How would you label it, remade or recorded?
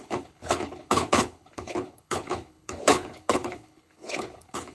remade